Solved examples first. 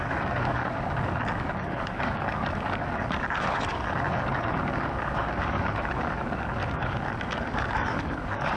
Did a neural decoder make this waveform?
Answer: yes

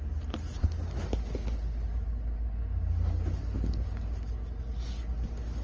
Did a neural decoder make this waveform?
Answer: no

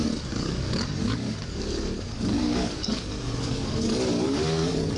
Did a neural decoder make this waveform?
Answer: yes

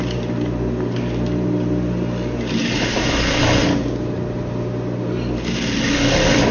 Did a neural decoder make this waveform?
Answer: no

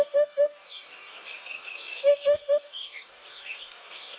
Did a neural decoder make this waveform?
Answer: yes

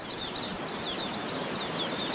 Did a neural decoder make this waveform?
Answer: no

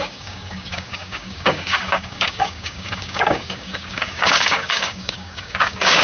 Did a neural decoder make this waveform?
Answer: yes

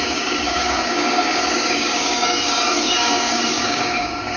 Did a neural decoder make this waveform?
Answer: yes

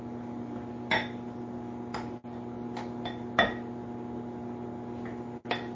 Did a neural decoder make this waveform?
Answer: no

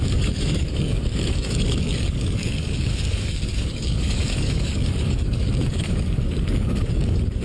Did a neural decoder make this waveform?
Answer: yes